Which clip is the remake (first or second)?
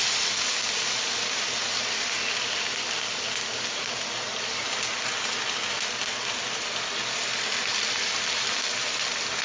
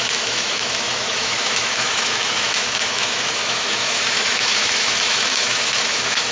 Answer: second